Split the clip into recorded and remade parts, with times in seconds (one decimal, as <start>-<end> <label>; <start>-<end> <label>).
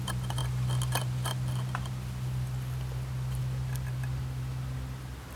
0.0-5.4 recorded